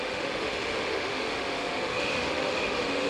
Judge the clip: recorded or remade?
remade